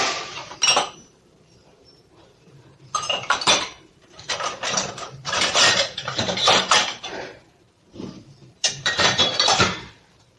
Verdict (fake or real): fake